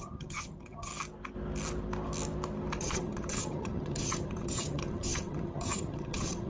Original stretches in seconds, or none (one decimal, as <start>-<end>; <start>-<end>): 0.9-2.8

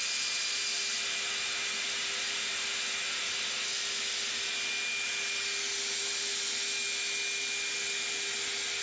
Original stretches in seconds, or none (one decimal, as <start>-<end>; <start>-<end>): 0.0-8.8

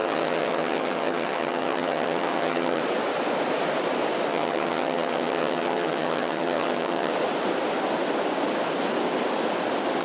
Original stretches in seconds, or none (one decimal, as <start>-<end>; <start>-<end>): 2.8-4.3; 7.1-10.0

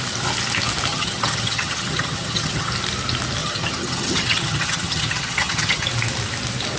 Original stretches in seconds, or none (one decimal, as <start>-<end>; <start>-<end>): 0.0-0.9; 2.7-3.4; 5.9-6.8

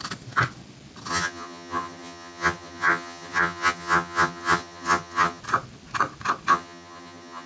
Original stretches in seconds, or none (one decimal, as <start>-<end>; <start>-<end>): 0.0-1.1; 5.4-6.5

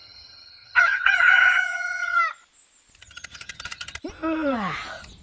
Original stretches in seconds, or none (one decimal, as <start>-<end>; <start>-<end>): 2.2-3.0; 4.0-5.2

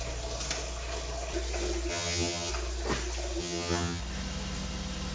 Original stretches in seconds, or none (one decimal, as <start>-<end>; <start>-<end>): 0.0-1.9; 2.5-3.4; 4.0-5.1